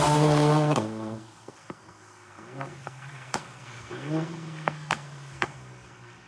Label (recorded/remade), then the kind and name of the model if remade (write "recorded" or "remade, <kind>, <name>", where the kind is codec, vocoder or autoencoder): remade, codec, SNAC